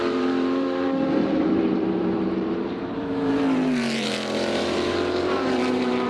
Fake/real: fake